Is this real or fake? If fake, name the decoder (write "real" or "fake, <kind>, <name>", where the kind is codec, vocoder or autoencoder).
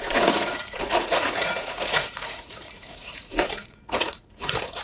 fake, vocoder, Vocos